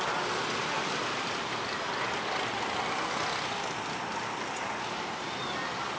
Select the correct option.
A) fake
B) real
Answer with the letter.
B